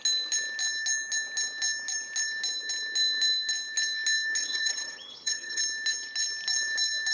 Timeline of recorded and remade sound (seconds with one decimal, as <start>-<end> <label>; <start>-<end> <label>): 0.0-4.4 recorded; 4.4-5.6 remade; 5.6-7.1 recorded